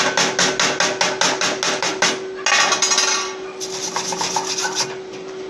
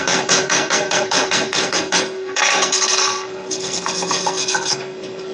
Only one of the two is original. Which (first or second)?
first